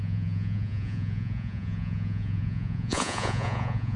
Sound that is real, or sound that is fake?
fake